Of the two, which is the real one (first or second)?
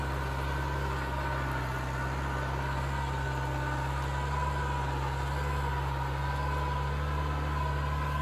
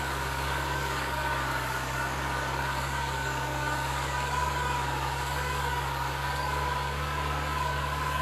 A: first